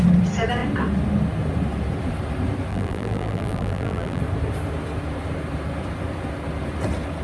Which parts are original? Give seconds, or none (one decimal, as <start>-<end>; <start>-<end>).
0.0-2.7; 4.2-7.2